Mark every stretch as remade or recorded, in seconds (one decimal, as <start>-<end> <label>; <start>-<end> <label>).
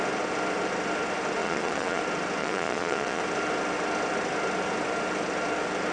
0.0-1.4 recorded; 1.4-2.0 remade; 2.0-2.4 recorded; 2.4-3.2 remade; 3.2-5.9 recorded